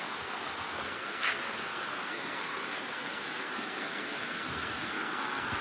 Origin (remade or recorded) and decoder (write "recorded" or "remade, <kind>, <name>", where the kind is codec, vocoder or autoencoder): remade, codec, SNAC